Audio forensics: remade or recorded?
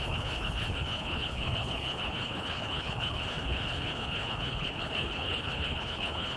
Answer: remade